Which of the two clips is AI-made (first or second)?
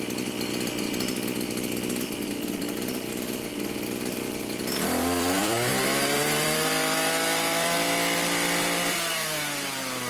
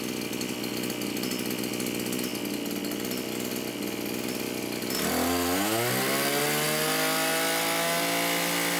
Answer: first